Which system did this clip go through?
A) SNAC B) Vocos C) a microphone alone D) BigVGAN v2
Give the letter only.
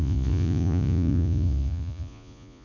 B